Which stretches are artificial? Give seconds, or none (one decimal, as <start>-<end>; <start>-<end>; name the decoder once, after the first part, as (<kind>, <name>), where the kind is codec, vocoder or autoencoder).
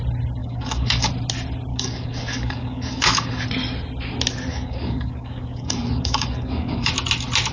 0.4-1.1 (codec, DAC); 1.7-3.4; 4.5-6.9